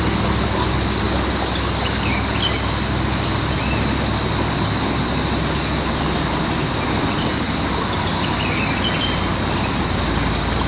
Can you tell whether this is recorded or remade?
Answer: recorded